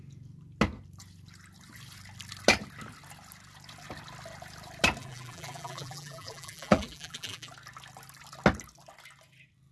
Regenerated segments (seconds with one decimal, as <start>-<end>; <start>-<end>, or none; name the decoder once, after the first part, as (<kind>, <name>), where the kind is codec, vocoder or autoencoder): 5.0-7.5 (vocoder, BigVGAN v2)